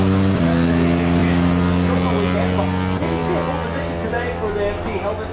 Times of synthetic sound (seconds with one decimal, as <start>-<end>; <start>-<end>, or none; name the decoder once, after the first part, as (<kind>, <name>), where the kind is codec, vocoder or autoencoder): none